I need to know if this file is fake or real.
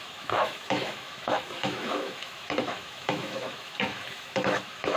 fake